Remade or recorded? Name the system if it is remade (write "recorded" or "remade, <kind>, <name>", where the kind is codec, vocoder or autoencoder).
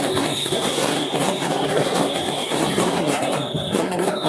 remade, codec, SNAC